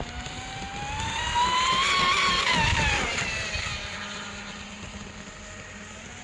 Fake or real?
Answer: real